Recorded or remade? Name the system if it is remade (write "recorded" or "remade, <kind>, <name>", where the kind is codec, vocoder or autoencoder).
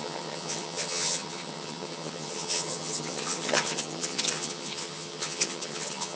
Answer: remade, vocoder, HiFi-GAN